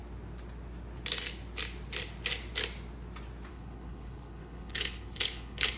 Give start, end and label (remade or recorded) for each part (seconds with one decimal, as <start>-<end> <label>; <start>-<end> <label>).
0.0-3.5 recorded; 3.5-5.8 remade